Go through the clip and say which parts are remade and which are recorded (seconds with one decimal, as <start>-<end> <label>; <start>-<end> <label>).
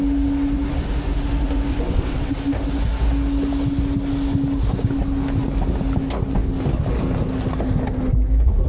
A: 0.0-1.7 recorded; 1.7-2.3 remade; 2.3-8.7 recorded